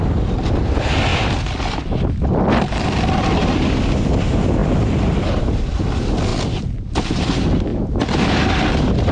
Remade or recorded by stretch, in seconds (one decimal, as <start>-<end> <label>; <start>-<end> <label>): 0.0-9.1 recorded